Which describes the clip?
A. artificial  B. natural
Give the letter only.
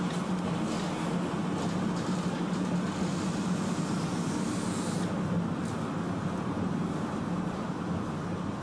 B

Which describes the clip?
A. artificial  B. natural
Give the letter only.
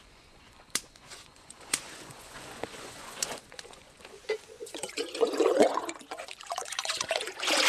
A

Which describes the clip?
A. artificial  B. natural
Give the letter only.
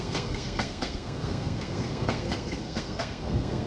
A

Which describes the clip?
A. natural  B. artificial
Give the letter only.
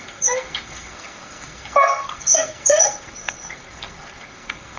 B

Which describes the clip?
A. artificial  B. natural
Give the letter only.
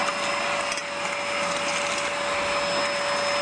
B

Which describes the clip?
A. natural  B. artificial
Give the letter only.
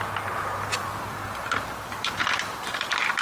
A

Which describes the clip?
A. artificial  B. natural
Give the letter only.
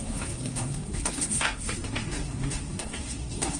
A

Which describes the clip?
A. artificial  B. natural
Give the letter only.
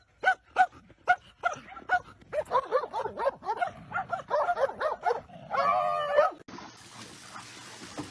B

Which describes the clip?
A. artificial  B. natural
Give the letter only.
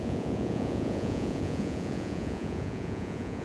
A